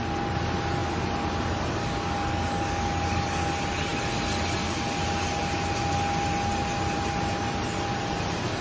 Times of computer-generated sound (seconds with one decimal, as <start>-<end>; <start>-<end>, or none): 1.8-3.5

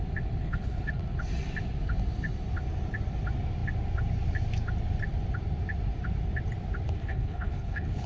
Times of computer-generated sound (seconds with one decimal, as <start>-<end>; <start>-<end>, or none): 0.4-1.0; 7.0-8.1

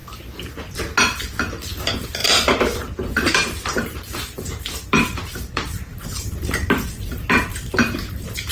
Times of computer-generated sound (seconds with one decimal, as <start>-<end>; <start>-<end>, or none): 2.2-6.5; 7.5-8.5

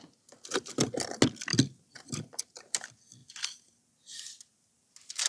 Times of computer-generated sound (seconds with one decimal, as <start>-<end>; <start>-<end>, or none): 1.5-2.5

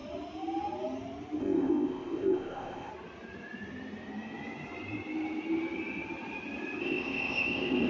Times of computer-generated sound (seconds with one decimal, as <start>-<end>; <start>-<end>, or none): 1.4-2.9; 6.8-7.9

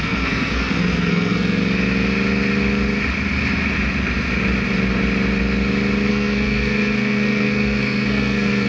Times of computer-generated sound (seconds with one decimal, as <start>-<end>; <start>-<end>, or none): 0.0-1.6; 6.1-8.7

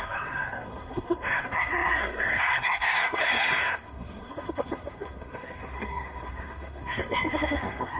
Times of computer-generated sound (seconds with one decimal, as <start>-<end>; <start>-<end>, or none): 0.0-8.0

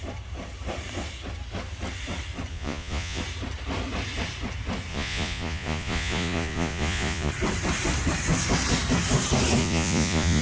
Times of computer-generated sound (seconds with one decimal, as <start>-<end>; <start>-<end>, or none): 2.5-3.2; 4.9-7.3; 9.6-10.4